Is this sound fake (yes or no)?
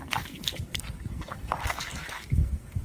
yes